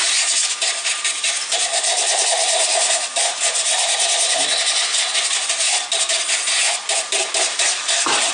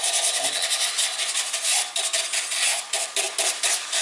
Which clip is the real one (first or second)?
second